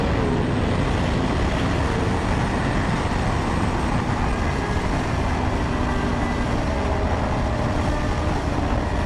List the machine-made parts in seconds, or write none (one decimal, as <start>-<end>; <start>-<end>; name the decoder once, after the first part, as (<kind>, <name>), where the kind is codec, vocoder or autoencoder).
none